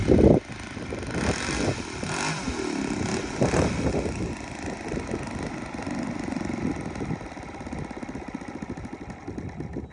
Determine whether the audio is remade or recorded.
recorded